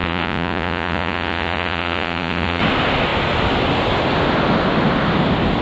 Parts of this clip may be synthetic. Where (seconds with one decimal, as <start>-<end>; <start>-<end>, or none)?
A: 0.0-2.6